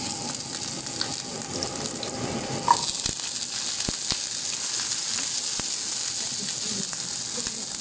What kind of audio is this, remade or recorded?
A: recorded